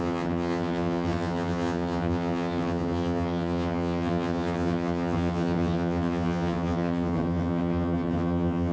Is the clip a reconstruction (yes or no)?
yes